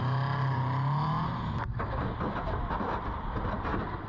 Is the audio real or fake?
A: real